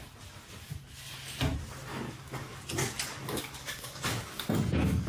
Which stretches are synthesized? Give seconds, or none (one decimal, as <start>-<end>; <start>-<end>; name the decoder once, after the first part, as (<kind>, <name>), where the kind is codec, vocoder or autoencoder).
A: 1.9-2.7 (codec, DAC); 3.2-4.5